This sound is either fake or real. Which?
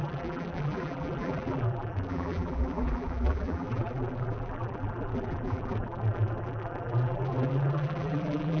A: fake